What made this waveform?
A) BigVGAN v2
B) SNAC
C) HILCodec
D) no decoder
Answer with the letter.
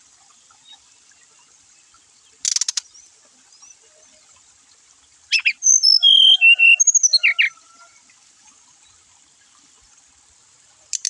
D